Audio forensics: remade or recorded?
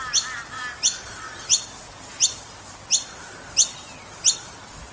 recorded